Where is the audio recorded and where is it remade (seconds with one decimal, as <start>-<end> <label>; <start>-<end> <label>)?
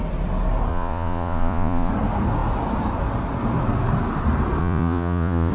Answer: 0.0-0.7 recorded; 0.7-1.9 remade; 1.9-4.6 recorded; 4.6-5.5 remade